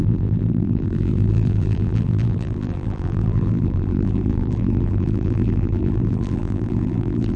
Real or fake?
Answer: fake